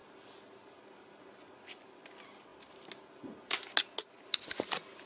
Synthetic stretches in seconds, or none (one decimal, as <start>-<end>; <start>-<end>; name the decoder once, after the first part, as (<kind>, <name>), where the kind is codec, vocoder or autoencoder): none